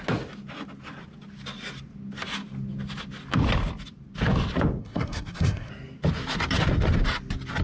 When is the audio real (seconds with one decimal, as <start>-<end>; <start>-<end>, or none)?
0.0-4.8; 5.7-7.6